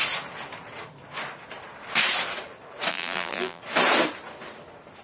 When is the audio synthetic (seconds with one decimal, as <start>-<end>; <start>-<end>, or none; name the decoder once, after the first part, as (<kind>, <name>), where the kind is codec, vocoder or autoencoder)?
2.9-3.6 (vocoder, BigVGAN v2)